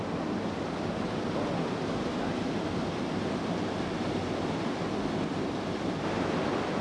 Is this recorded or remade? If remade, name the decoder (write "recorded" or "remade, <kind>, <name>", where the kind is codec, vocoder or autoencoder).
recorded